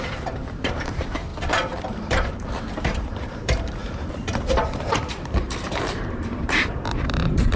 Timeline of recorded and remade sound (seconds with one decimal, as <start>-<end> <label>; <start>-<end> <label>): 0.0-1.3 remade; 1.3-1.8 recorded; 1.8-7.6 remade